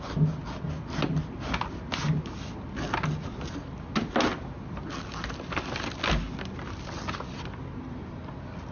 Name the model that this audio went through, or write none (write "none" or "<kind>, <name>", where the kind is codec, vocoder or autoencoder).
none